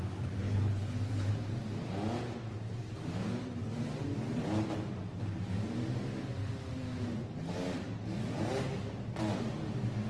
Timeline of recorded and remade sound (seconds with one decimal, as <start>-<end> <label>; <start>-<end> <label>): 0.0-0.4 recorded; 0.4-1.3 remade; 1.3-10.1 recorded